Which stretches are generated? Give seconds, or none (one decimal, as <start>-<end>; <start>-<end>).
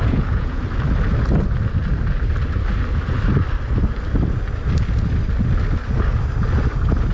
0.0-0.6